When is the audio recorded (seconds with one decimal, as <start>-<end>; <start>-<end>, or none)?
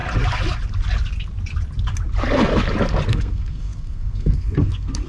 0.0-3.1